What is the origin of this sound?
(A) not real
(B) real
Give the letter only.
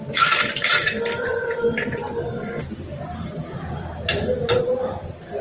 A